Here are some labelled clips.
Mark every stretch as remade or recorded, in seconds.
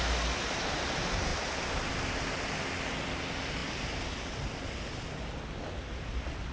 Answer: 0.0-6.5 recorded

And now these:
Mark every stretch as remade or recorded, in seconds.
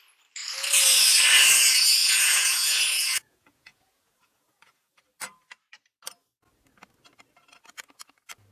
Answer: 0.0-2.0 recorded; 2.0-5.0 remade; 5.0-8.5 recorded